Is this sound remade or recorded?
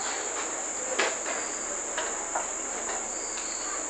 recorded